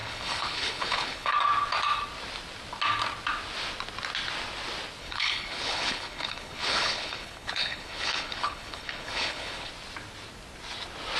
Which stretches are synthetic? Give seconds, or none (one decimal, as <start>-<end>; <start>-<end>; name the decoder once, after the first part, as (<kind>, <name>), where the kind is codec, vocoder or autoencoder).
0.0-1.3 (codec, HILCodec); 5.0-9.7